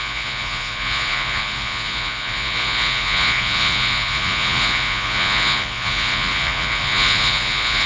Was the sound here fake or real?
fake